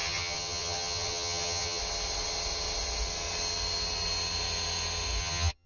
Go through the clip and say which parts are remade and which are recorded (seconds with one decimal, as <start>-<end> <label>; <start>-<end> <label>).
0.0-1.8 remade; 1.8-5.2 recorded; 5.2-5.7 remade